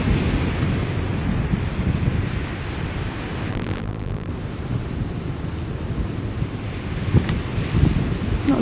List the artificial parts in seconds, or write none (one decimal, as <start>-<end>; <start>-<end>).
3.5-4.3